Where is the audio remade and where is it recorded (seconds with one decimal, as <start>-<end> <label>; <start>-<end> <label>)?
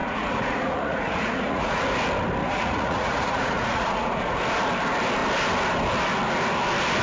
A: 0.0-1.8 remade; 1.8-2.4 recorded; 2.4-4.4 remade; 4.4-7.0 recorded